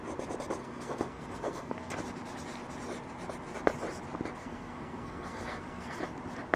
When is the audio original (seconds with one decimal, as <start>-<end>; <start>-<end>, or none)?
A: 0.0-0.6; 2.0-4.4; 6.0-6.6